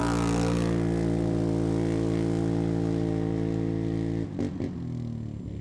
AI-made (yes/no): no